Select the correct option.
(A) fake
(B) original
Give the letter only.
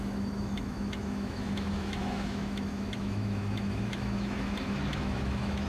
A